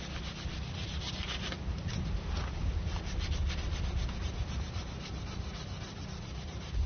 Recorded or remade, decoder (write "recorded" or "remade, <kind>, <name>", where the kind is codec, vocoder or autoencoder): recorded